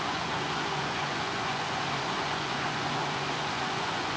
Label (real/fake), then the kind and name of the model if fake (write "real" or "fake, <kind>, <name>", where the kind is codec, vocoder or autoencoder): fake, vocoder, Vocos